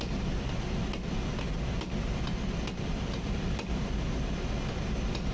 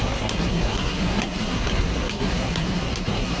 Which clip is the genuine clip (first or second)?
first